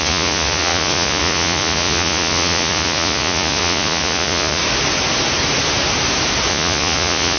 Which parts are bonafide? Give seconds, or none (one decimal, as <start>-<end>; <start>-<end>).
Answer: 4.6-6.5